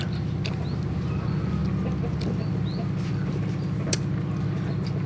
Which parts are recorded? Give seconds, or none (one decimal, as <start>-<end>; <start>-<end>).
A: 0.0-5.1